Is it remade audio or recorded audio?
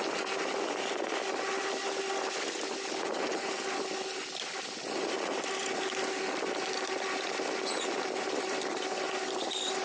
recorded